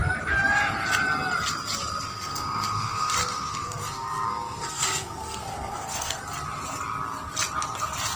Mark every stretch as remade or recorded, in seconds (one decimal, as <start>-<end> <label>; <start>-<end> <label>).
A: 0.0-2.1 recorded; 2.1-6.2 remade; 6.2-8.2 recorded

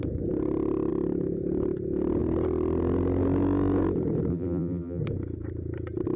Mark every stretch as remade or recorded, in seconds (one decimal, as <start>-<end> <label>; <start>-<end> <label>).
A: 0.0-4.3 recorded; 4.3-5.0 remade; 5.0-6.2 recorded

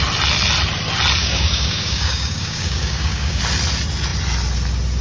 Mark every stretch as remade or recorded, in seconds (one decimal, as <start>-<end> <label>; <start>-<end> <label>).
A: 0.0-1.2 recorded; 1.2-3.4 remade; 3.4-5.0 recorded